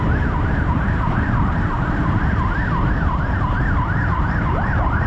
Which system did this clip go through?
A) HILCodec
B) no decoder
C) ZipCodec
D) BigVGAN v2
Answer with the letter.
D